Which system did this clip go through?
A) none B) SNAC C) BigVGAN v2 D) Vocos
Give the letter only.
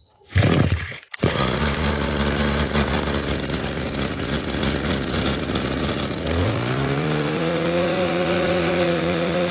D